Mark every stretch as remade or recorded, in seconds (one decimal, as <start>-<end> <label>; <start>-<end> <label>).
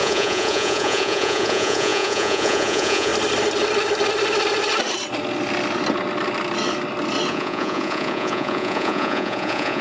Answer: 0.0-3.1 remade; 3.1-7.3 recorded; 7.3-9.8 remade